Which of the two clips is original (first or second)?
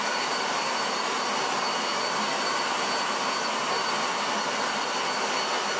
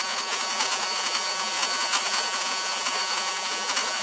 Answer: first